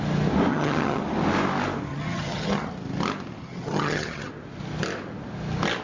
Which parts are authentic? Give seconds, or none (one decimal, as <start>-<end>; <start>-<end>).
0.0-0.5; 1.0-1.9; 2.7-3.4; 4.3-5.8